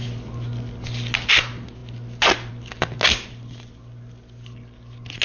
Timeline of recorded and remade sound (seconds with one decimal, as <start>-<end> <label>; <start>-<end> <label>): 0.0-5.2 recorded